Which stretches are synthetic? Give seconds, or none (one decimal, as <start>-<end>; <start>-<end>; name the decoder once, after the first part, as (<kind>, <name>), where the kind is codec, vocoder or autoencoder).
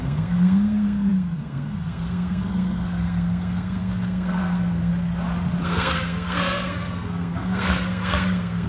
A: 0.0-4.9 (codec, SNAC); 5.6-8.7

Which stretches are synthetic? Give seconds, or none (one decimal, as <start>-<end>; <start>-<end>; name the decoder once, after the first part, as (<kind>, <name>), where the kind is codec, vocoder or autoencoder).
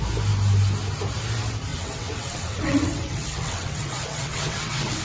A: 1.7-5.0 (vocoder, WaveNeXt)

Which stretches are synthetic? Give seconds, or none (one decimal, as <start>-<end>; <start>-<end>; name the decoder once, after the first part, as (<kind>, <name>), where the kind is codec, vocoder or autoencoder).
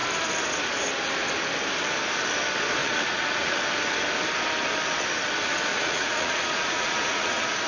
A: 2.8-3.6 (vocoder, Vocos); 5.7-7.7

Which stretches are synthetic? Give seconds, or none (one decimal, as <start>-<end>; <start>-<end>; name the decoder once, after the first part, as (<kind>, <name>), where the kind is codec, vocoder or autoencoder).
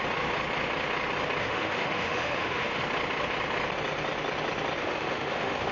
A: 1.4-2.8 (autoencoder, DAC-VAE); 4.8-5.7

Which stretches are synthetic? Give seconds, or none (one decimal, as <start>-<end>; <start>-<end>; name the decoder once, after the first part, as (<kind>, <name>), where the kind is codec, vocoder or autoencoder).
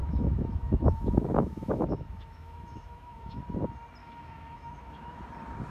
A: 0.0-3.4 (autoencoder, DAC-VAE); 4.0-5.2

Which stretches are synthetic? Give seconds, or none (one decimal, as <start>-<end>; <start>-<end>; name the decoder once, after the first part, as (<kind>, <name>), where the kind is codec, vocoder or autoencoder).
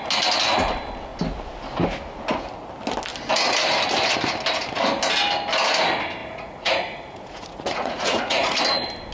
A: 6.2-8.6 (vocoder, Vocos)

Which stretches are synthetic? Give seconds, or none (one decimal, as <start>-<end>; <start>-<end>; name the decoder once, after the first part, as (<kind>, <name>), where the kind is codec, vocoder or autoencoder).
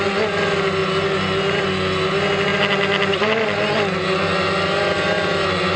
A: none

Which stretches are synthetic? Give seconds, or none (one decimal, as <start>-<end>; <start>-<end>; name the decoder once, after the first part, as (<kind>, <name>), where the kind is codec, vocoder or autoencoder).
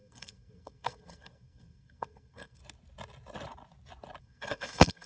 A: 0.0-2.6 (codec, SNAC); 4.2-5.1